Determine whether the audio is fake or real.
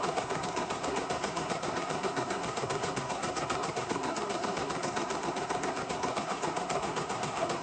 fake